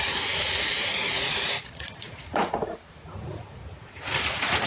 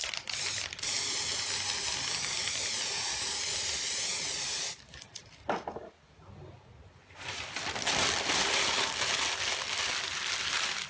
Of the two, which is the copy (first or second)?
first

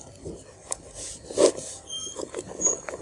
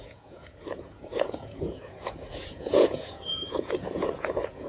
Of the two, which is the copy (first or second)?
second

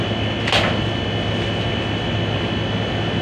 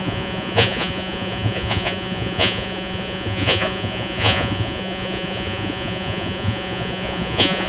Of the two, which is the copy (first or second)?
second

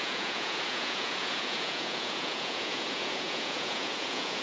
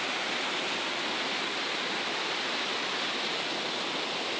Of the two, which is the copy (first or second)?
first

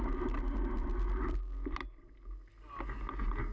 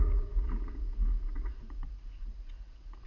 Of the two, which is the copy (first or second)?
second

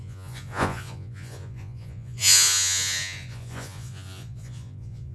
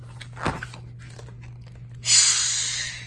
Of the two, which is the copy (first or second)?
first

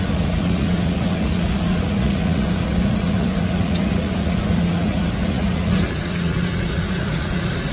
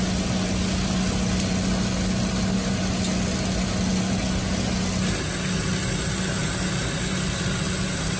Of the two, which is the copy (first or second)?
first